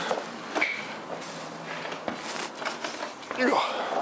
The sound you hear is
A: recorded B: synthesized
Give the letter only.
A